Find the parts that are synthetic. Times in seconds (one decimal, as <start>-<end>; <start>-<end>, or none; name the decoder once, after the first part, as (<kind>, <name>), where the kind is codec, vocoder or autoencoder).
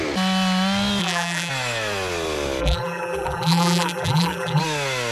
1.0-1.5 (vocoder, BigVGAN v2); 2.6-4.6